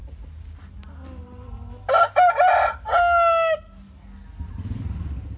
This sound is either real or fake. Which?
real